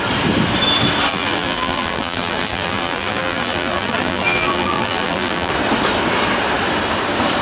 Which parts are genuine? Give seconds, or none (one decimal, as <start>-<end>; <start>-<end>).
0.0-1.1; 5.5-7.4